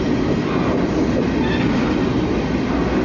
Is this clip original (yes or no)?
yes